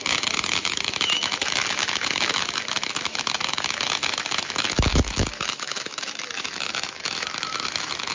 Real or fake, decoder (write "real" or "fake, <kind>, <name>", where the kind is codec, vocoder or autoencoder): fake, autoencoder, DAC-VAE